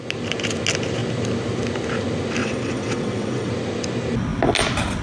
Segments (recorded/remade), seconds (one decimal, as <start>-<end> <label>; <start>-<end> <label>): 0.0-2.4 recorded; 2.4-3.5 remade; 3.5-5.0 recorded